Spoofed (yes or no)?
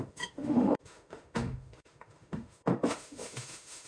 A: yes